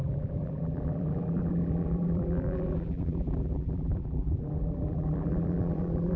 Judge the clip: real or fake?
fake